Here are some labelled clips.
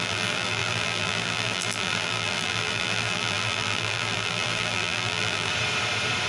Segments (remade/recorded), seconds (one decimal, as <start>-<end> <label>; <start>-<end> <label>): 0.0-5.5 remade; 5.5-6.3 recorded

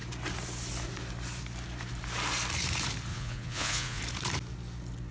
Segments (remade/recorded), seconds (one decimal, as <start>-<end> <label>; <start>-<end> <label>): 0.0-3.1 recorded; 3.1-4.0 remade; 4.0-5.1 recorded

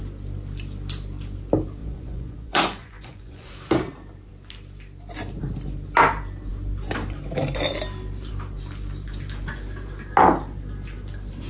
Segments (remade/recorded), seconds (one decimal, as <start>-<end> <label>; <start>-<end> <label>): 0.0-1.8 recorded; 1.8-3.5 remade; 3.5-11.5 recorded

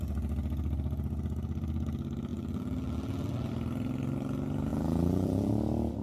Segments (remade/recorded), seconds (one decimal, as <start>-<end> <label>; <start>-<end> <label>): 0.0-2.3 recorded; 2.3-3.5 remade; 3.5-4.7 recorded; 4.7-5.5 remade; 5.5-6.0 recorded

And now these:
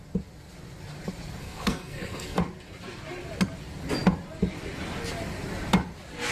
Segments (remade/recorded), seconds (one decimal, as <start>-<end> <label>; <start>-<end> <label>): 0.0-1.4 recorded; 1.4-2.4 remade; 2.4-6.3 recorded

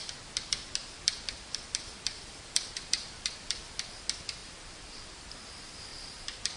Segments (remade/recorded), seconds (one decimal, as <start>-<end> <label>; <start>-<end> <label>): 0.0-0.8 recorded; 0.8-3.6 remade; 3.6-4.4 recorded; 4.4-5.3 remade; 5.3-5.9 recorded; 5.9-6.6 remade